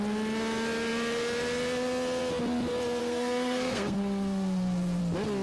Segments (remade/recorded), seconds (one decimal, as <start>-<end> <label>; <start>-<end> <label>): 0.0-3.0 recorded; 3.0-5.0 remade; 5.0-5.4 recorded

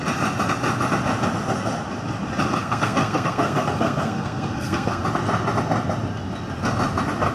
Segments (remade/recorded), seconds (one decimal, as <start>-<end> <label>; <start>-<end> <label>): 0.0-2.6 recorded; 2.6-5.0 remade; 5.0-7.3 recorded

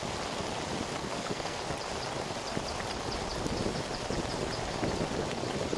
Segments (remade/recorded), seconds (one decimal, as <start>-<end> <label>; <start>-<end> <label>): 0.0-1.0 recorded; 1.0-1.6 remade; 1.6-5.8 recorded

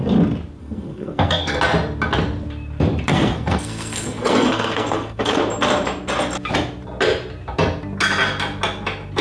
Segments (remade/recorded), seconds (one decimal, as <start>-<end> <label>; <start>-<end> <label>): 0.0-0.6 recorded; 0.6-1.6 remade; 1.6-3.1 recorded; 3.1-5.4 remade; 5.4-9.2 recorded

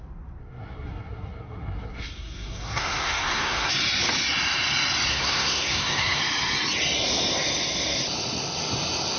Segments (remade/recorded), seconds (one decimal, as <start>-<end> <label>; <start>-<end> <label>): 0.0-0.4 recorded; 0.4-3.7 remade; 3.7-5.1 recorded; 5.1-6.2 remade; 6.2-9.2 recorded

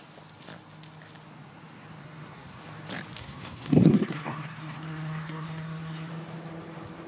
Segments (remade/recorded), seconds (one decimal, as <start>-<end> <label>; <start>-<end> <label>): 0.0-2.0 recorded; 2.0-2.6 remade; 2.6-3.2 recorded; 3.2-6.1 remade; 6.1-7.1 recorded

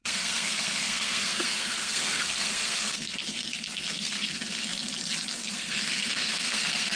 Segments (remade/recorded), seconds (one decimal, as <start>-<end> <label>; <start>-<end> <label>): 0.0-4.7 remade; 4.7-5.3 recorded; 5.3-7.0 remade

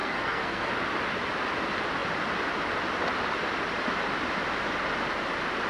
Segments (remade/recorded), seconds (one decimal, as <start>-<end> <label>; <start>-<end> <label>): 0.0-0.7 remade; 0.7-5.7 recorded